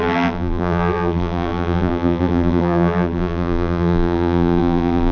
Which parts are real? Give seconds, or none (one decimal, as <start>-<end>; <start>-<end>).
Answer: none